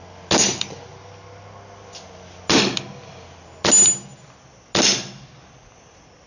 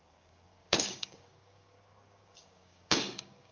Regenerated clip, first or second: second